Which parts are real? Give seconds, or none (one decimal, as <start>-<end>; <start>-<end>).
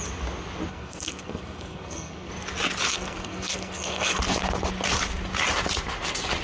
0.0-0.7; 2.3-2.9; 4.2-6.4